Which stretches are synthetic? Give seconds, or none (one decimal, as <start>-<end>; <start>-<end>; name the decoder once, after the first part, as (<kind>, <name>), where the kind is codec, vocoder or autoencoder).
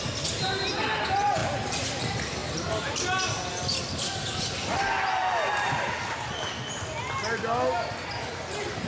none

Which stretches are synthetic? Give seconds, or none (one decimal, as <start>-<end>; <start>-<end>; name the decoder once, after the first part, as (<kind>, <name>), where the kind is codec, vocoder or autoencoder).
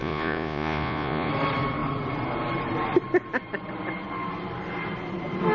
0.0-1.3 (vocoder, Vocos)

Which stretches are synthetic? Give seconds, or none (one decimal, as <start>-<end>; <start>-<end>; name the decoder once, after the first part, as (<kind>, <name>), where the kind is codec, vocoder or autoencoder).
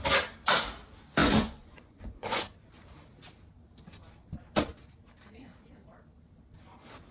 1.2-2.4 (vocoder, Vocos)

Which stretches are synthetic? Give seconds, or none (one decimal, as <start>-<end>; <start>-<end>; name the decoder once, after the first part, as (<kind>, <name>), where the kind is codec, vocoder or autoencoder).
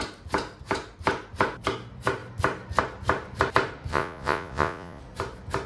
3.9-5.0 (vocoder, Vocos)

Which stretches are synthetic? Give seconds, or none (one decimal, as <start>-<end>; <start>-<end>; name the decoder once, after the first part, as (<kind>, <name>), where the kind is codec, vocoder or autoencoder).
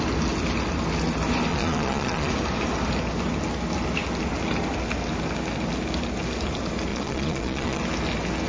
1.5-2.3 (vocoder, Vocos); 6.9-7.8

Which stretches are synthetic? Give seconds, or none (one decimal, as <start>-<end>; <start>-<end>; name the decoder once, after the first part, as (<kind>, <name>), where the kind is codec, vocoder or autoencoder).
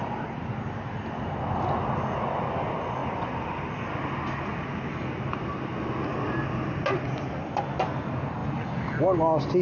none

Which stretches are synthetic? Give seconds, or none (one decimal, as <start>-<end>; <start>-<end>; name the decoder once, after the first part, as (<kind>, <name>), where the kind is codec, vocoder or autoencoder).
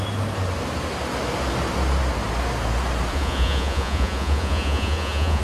3.1-5.4 (vocoder, Vocos)